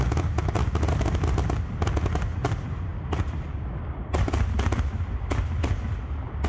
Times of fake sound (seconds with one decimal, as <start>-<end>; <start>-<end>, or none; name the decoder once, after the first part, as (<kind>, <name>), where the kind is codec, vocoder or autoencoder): none